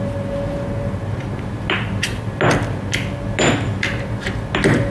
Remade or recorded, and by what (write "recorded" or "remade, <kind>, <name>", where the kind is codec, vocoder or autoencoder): recorded